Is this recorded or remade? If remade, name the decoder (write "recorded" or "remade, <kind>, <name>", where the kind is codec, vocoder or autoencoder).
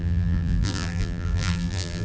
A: remade, vocoder, BigVGAN v2